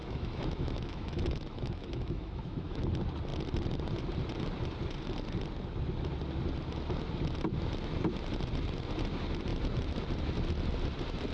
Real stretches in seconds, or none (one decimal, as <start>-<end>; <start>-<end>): 2.9-11.3